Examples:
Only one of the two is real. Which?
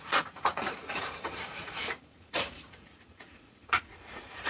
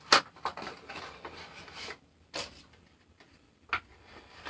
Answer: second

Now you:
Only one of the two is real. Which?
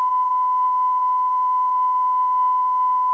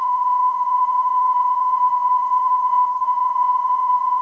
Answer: first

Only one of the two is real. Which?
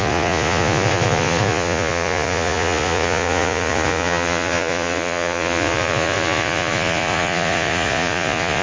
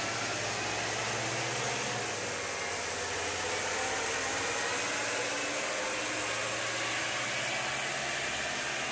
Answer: second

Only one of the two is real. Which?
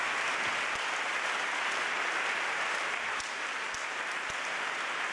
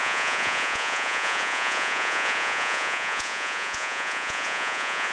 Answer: first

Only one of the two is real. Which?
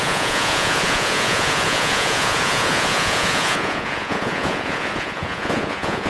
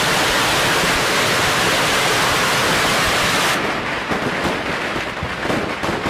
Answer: second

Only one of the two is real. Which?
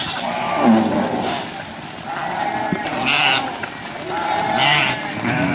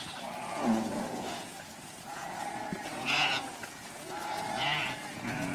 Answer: first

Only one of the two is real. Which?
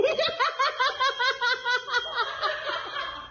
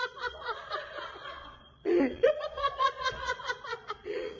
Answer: first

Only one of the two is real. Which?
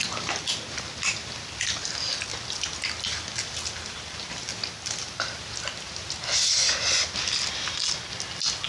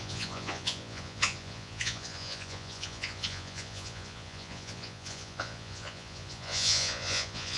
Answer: first